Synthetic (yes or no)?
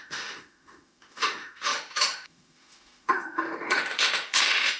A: yes